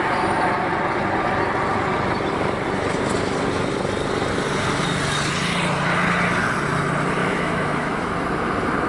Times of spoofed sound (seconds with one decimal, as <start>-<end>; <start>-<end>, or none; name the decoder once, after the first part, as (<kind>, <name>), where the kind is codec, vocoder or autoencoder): 7.2-8.1 (autoencoder, DAC-VAE)